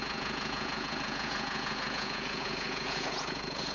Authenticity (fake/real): fake